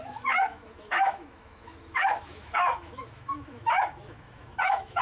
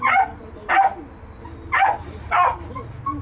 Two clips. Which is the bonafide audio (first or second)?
second